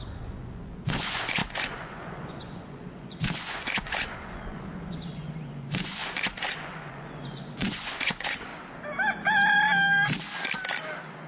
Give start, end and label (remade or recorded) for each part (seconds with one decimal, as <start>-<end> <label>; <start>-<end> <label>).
0.0-8.5 remade; 8.5-11.3 recorded